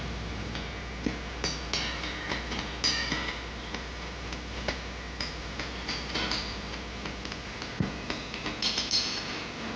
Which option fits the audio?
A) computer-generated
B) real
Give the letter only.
B